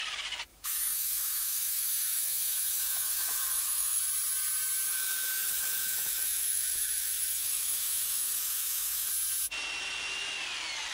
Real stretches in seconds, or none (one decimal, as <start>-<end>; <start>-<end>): 0.0-0.5; 4.0-4.9; 9.1-10.9